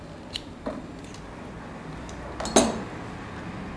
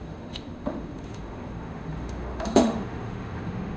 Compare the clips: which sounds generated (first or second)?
second